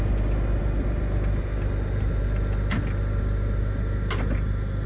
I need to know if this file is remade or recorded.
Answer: recorded